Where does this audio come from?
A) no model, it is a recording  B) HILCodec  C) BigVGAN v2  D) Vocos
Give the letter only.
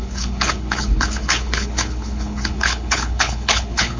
B